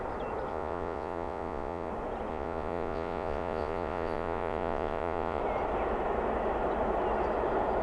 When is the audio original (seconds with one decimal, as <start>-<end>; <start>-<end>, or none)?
0.0-0.5; 1.9-2.3; 5.4-7.8